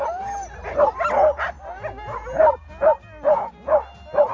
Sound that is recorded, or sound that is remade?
recorded